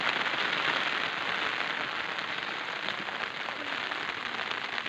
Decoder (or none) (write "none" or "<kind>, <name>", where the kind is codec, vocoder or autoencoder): none